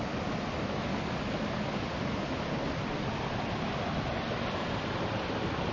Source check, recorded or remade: recorded